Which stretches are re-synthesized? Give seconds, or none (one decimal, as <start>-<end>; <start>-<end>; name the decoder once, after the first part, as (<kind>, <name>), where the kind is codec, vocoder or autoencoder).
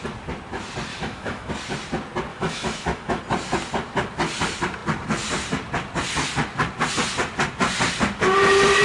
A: 0.9-1.5 (autoencoder, DAC-VAE); 2.3-3.2